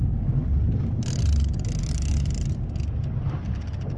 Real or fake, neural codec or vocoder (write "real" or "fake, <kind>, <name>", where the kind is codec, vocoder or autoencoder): real